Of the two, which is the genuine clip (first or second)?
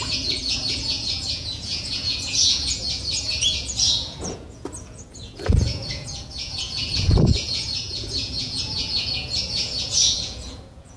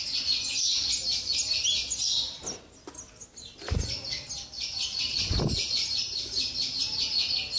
second